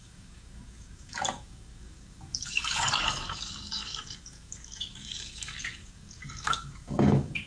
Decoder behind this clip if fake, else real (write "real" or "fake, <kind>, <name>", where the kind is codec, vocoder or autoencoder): fake, codec, DAC